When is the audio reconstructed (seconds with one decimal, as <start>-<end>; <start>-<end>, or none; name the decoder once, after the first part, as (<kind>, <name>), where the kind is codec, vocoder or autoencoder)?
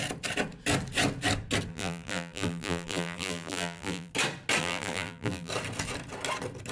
1.7-4.1 (vocoder, BigVGAN v2); 4.6-5.5